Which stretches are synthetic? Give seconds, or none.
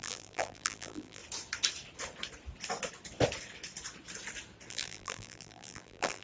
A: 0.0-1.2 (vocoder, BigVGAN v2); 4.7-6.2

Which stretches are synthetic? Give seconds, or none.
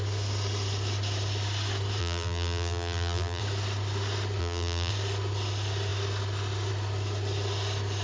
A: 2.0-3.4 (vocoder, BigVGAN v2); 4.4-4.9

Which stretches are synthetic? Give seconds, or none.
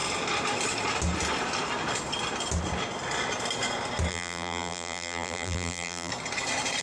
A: 4.1-6.1 (vocoder, BigVGAN v2)